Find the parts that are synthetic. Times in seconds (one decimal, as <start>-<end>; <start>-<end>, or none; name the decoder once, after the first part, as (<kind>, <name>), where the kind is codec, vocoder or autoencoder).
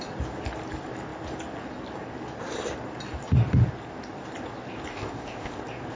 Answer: 4.9-5.6 (codec, ZipCodec)